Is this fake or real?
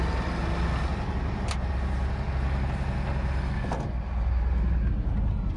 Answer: real